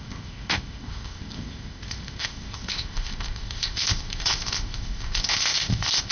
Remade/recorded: remade